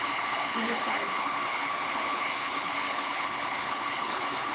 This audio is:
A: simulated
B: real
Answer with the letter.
A